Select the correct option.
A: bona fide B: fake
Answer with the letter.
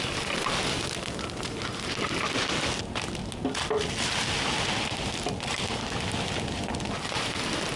A